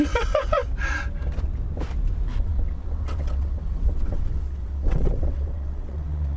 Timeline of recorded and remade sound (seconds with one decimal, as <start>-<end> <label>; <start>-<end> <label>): 0.0-0.6 remade; 0.6-2.4 recorded; 2.4-6.4 remade